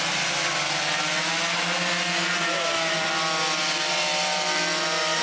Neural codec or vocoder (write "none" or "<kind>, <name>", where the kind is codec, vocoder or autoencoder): none